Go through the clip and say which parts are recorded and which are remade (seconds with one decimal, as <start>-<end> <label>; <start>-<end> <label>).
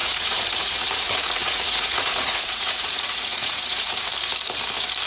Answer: 0.0-4.1 remade; 4.1-5.1 recorded